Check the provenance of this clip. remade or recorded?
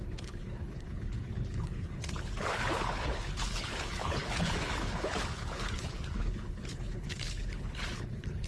remade